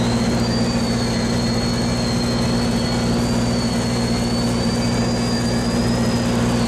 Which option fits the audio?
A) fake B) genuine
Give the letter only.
B